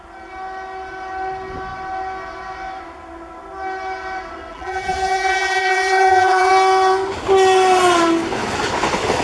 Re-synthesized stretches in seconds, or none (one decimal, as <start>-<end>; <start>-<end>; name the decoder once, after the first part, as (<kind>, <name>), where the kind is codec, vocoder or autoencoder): 4.5-6.5 (vocoder, BigVGAN v2)